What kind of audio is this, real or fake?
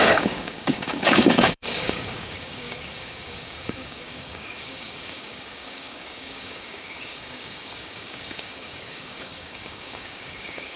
fake